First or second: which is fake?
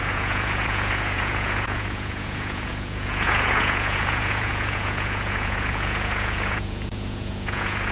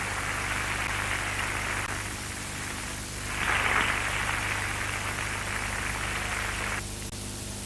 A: first